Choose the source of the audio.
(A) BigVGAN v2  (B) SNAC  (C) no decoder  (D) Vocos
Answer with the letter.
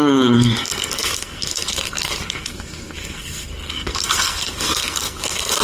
B